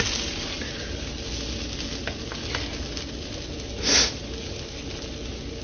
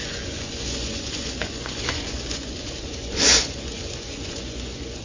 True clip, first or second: first